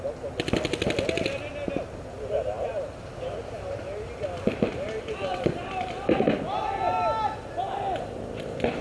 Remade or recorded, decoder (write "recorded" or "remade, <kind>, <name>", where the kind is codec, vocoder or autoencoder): recorded